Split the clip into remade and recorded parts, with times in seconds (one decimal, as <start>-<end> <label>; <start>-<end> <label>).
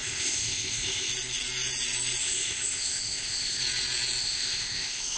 0.0-1.1 remade; 1.1-2.2 recorded; 2.2-3.6 remade; 3.6-4.2 recorded; 4.2-5.2 remade